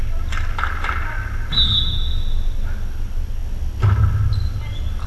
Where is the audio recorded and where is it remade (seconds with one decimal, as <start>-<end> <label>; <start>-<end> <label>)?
0.0-5.1 recorded